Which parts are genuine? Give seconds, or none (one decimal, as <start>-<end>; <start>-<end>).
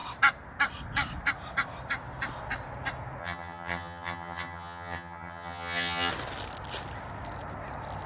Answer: 0.0-3.2; 6.1-8.1